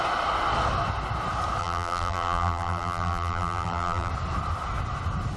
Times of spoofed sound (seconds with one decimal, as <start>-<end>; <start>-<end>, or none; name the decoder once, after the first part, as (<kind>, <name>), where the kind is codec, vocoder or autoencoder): 1.6-4.1 (vocoder, BigVGAN v2)

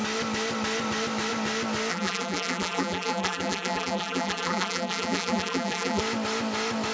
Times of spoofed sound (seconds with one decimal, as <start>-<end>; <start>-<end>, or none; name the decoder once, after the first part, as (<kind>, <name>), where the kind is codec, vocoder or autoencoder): 1.9-6.0 (vocoder, BigVGAN v2)

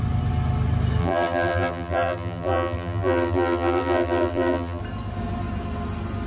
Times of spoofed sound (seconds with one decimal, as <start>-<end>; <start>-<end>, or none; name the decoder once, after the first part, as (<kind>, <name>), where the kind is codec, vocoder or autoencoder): 1.0-4.8 (vocoder, BigVGAN v2)

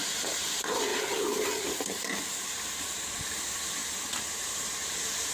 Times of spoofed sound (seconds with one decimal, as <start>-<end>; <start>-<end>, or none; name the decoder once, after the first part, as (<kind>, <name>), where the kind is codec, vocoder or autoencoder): 0.0-3.8 (vocoder, BigVGAN v2); 4.4-5.3